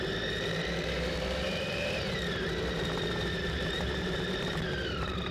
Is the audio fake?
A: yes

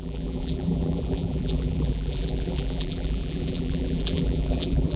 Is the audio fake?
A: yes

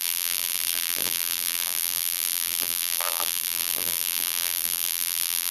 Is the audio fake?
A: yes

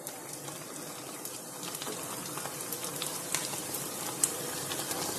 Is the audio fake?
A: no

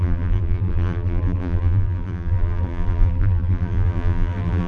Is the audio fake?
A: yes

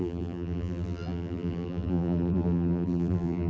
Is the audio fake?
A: yes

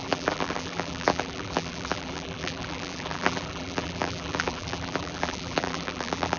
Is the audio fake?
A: yes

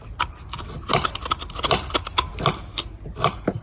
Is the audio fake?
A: no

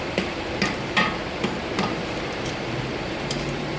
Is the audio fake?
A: yes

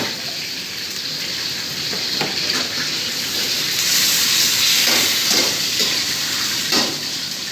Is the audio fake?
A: yes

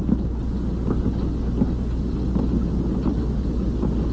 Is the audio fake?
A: no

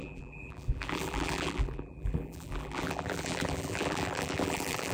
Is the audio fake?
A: yes